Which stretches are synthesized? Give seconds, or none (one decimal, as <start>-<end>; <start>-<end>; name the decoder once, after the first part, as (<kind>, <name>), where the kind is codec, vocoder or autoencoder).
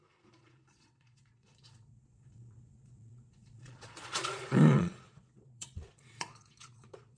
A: 0.0-7.2 (vocoder, Vocos)